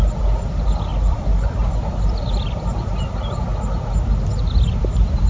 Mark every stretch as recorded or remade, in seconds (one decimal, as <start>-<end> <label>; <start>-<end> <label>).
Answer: 0.0-3.5 remade; 3.5-4.8 recorded; 4.8-5.3 remade